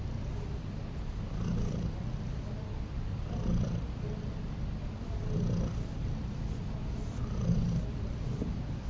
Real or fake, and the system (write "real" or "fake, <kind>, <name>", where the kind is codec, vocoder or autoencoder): real